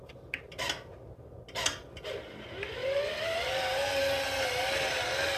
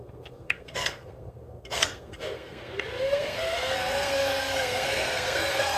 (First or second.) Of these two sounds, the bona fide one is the first